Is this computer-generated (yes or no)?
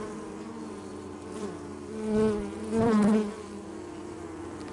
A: no